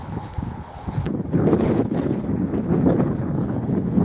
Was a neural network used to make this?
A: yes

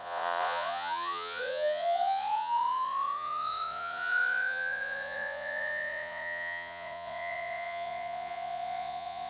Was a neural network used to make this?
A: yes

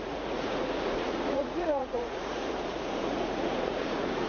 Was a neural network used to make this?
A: yes